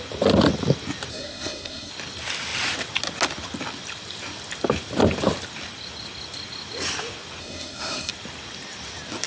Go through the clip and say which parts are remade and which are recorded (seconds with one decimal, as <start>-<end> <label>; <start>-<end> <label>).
0.0-1.1 recorded; 1.1-1.9 remade; 1.9-7.4 recorded; 7.4-8.1 remade; 8.1-9.3 recorded